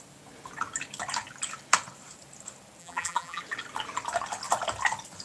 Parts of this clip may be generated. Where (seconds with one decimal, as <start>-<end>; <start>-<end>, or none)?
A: 2.8-3.4